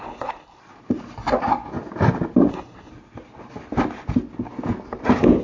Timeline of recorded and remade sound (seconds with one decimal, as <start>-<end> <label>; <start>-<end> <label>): 0.0-0.6 remade; 0.6-2.5 recorded; 2.5-2.9 remade; 2.9-5.4 recorded